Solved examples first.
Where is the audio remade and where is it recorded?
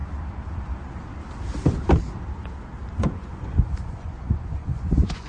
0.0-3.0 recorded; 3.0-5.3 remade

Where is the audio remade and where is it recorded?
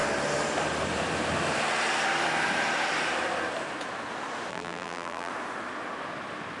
0.0-4.5 recorded; 4.5-5.3 remade; 5.3-6.6 recorded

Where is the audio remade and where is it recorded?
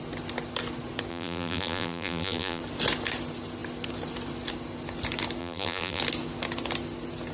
0.0-1.1 recorded; 1.1-2.6 remade; 2.6-5.4 recorded; 5.4-6.0 remade; 6.0-7.3 recorded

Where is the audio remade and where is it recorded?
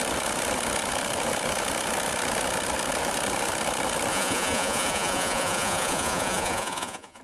0.0-4.1 recorded; 4.1-7.2 remade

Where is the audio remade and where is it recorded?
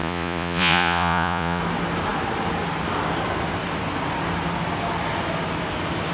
0.0-1.6 remade; 1.6-6.1 recorded